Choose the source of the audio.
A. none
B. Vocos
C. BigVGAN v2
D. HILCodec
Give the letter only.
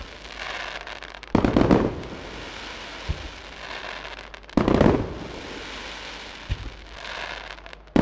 A